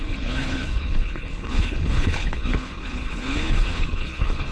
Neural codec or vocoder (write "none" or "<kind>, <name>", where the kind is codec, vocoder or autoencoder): codec, HILCodec